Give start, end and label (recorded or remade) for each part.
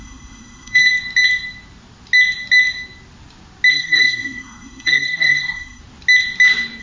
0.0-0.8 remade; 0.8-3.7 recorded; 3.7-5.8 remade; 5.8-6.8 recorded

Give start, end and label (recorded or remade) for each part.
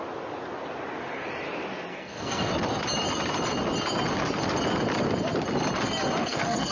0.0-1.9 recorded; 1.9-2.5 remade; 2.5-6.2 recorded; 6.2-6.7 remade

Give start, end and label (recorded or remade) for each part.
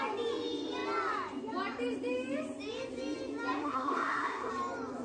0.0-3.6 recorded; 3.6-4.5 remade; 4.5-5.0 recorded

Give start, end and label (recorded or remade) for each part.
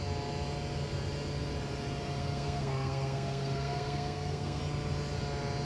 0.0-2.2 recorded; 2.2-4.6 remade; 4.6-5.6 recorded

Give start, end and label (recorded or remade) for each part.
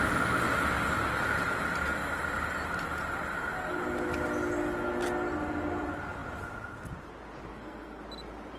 0.0-7.5 recorded; 7.5-8.0 remade; 8.0-8.6 recorded